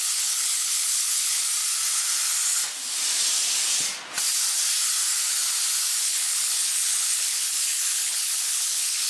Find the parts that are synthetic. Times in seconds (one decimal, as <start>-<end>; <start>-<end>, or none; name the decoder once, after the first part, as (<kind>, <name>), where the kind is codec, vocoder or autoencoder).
0.0-1.4 (codec, HILCodec); 6.0-9.1